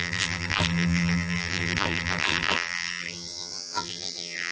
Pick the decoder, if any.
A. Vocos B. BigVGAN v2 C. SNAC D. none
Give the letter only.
B